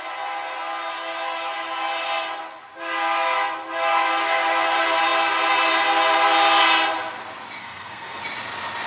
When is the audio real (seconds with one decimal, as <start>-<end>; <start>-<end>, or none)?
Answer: 0.0-7.6; 8.2-8.9